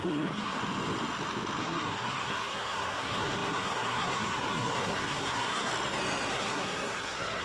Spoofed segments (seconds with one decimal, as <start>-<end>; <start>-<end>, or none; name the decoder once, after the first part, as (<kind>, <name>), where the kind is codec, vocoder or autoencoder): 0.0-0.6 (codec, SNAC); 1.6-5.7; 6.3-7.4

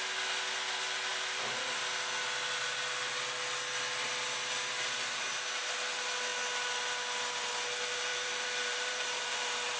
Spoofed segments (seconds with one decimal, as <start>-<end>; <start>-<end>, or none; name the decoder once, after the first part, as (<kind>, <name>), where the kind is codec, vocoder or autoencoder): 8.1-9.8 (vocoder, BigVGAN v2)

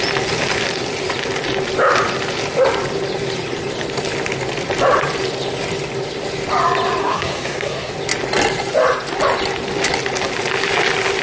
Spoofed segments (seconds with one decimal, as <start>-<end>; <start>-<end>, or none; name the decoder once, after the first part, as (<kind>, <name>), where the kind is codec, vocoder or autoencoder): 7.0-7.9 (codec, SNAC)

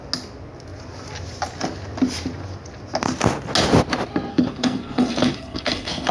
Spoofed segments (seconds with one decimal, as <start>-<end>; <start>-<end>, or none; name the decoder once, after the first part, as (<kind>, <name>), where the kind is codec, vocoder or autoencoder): 4.3-6.1 (codec, SNAC)

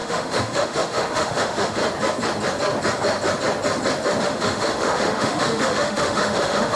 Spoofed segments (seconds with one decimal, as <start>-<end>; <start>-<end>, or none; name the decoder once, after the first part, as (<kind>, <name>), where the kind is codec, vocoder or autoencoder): 0.0-1.8 (autoencoder, DAC-VAE); 4.2-6.8

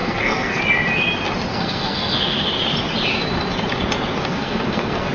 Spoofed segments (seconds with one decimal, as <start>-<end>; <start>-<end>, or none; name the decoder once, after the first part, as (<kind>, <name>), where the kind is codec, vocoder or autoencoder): 0.0-0.6 (codec, SNAC); 1.5-2.5; 4.3-5.1